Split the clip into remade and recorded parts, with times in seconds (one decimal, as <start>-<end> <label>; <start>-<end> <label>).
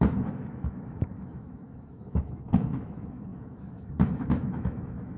0.0-5.2 remade